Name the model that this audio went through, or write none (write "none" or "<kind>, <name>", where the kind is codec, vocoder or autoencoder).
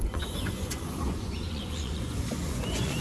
vocoder, Vocos